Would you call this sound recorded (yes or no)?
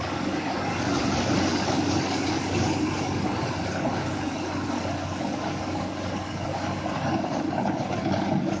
no